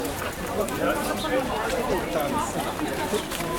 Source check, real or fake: fake